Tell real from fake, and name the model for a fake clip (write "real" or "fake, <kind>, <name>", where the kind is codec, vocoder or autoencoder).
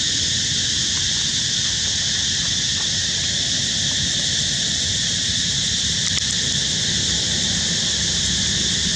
real